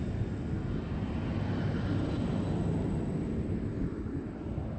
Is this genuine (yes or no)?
yes